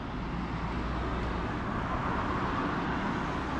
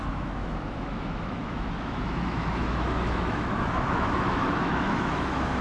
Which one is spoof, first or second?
second